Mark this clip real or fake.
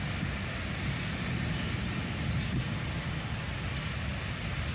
real